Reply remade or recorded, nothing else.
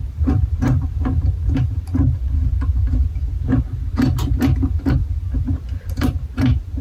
remade